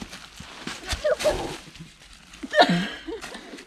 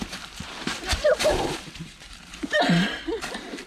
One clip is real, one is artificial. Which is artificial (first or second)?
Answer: second